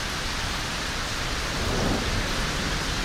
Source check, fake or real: real